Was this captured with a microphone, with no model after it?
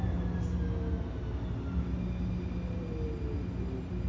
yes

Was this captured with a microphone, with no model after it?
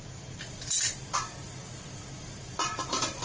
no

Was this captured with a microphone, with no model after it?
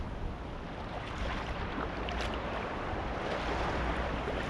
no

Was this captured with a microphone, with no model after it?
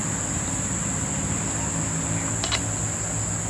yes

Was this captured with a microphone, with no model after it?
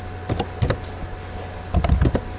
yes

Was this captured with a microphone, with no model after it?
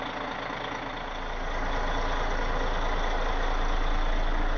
yes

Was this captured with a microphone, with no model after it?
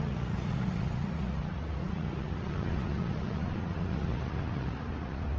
no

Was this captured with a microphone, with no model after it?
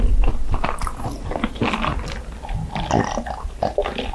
yes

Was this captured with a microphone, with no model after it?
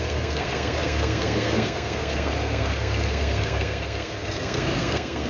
no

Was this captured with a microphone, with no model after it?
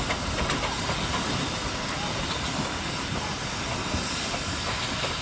yes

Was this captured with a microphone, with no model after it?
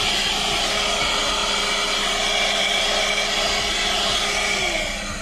yes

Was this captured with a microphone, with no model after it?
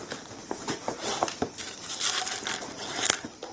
yes